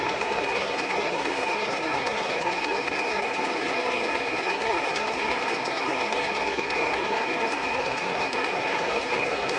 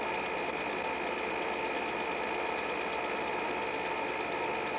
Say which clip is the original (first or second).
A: second